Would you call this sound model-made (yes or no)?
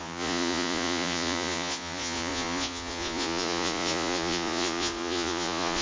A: yes